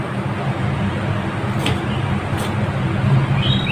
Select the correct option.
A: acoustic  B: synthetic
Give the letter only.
A